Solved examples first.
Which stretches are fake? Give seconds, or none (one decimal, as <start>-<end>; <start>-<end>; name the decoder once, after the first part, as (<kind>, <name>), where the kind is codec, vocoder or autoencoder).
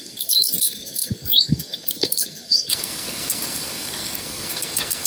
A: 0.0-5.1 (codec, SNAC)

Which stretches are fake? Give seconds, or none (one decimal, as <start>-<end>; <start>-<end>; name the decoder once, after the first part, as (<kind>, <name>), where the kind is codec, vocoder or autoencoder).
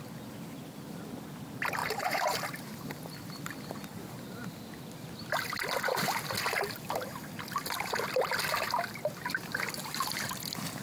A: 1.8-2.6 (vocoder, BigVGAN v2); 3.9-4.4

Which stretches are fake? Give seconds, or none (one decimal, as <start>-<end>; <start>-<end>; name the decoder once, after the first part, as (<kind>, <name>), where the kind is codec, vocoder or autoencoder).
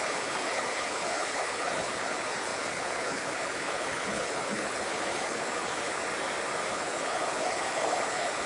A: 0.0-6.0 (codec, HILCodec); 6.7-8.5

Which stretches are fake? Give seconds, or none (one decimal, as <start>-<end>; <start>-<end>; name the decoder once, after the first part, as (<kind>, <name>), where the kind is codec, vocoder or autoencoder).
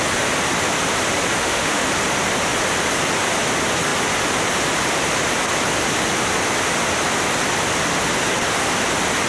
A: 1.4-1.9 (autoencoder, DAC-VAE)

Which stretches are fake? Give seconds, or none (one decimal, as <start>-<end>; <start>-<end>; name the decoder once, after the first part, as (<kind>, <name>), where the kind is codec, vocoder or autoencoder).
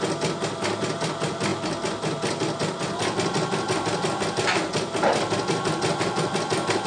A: none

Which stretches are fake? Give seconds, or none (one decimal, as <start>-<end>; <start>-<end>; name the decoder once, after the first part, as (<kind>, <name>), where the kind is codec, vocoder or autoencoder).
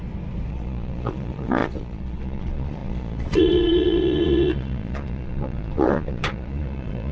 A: 0.5-7.1 (vocoder, Vocos)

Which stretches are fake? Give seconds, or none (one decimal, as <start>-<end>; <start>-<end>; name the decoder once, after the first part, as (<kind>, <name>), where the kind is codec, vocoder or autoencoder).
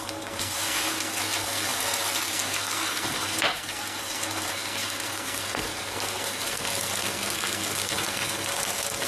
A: 0.0-9.1 (codec, SNAC)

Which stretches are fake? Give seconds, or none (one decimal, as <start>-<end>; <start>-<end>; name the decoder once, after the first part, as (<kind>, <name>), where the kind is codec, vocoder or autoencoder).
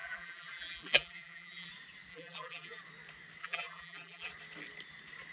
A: 0.0-1.7 (vocoder, BigVGAN v2); 2.1-2.8; 3.4-4.3